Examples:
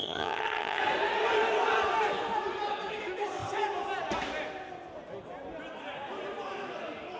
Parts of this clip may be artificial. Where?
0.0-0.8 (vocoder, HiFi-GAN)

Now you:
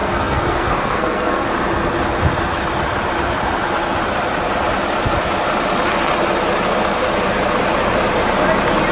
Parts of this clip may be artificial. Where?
0.0-1.5 (codec, SNAC)

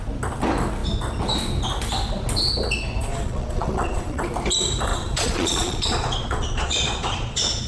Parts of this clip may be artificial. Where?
3.1-4.2 (vocoder, Vocos); 4.9-7.7

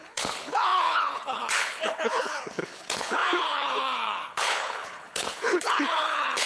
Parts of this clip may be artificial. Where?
0.0-6.5 (codec, HILCodec)

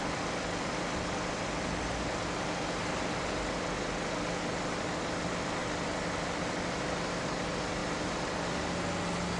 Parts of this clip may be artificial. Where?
none

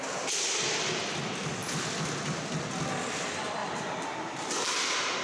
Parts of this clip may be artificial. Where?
1.6-2.5 (vocoder, BigVGAN v2); 3.6-4.4

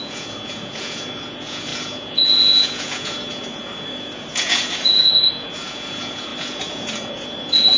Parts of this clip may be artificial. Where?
0.0-7.8 (vocoder, Vocos)